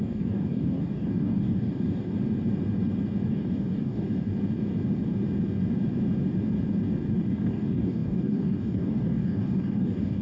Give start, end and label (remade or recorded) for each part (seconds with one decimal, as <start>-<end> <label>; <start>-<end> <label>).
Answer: 0.0-2.1 remade; 2.1-3.3 recorded; 3.3-4.3 remade; 4.3-7.1 recorded; 7.1-10.2 remade